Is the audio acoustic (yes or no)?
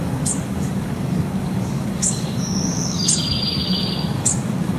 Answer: no